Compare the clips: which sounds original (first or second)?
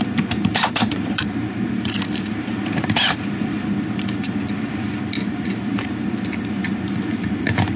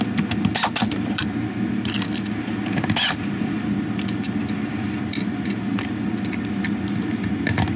second